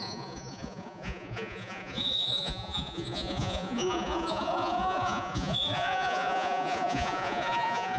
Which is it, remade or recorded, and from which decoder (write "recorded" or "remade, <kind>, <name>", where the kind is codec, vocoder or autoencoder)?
remade, vocoder, Vocos